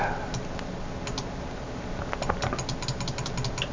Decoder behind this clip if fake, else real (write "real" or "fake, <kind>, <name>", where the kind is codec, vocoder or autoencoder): real